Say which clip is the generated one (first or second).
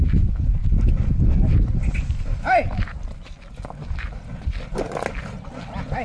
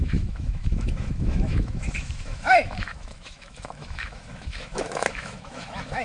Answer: second